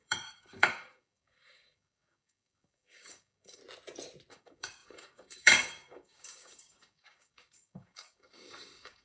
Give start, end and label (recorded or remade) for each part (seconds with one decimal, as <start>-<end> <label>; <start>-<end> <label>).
0.0-3.6 remade; 3.6-4.3 recorded; 4.3-9.0 remade